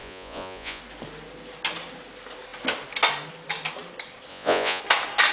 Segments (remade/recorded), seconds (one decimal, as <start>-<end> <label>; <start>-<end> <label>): 0.0-0.8 remade; 0.8-4.3 recorded; 4.3-4.8 remade; 4.8-5.3 recorded